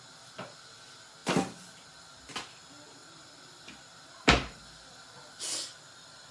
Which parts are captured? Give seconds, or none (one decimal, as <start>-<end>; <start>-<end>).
0.0-6.3

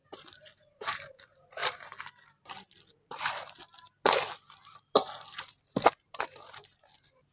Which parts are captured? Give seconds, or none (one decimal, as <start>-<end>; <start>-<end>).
1.6-5.3

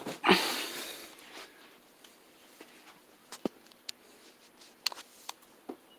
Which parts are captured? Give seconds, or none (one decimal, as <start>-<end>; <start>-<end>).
0.0-6.0

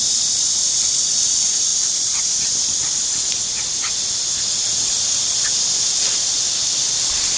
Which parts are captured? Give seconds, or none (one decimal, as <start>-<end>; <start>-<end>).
0.0-7.4

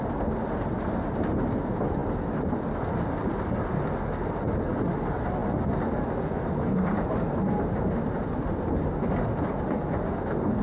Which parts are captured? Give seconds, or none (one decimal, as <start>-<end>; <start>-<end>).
0.0-10.6

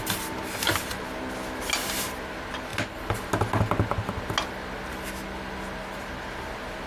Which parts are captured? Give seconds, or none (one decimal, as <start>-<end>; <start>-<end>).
0.0-6.9

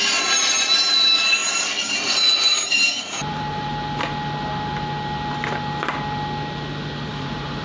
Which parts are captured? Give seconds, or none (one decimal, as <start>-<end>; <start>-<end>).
3.7-7.1